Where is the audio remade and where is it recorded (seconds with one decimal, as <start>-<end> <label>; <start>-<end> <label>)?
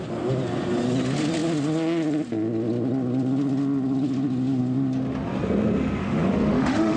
0.0-6.0 recorded; 6.0-7.0 remade